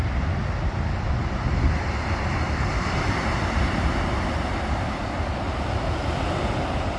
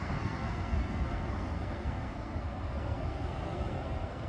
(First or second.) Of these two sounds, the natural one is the first